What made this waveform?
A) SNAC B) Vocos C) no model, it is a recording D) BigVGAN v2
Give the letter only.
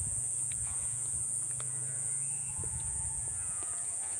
B